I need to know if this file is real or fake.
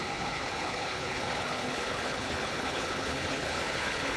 fake